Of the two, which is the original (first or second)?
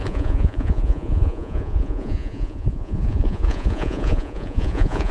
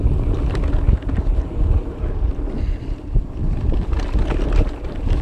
second